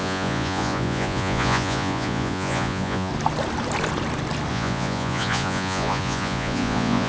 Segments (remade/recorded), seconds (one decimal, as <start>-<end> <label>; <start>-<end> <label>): 0.0-3.1 remade; 3.1-4.5 recorded; 4.5-7.1 remade